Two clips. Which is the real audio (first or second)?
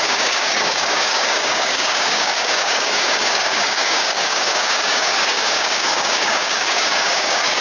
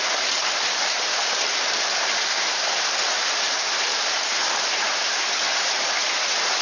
second